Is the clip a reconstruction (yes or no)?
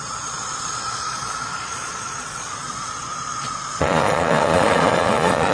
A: yes